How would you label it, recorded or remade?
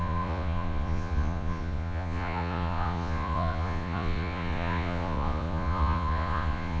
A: remade